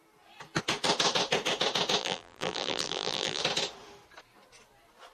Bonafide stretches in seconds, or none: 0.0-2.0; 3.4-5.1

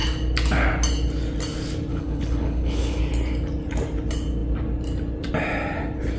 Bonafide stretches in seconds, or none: 0.0-1.9; 3.0-6.2

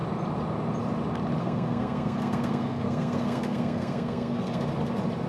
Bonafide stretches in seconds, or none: 0.0-1.4; 4.6-5.3